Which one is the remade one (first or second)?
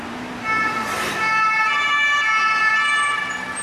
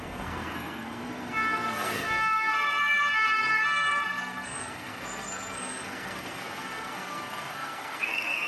second